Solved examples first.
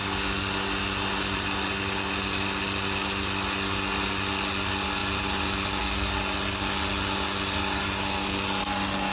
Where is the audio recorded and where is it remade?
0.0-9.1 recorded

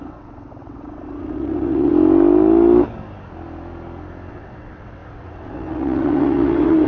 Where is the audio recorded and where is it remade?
0.0-1.9 remade; 1.9-4.3 recorded; 4.3-6.9 remade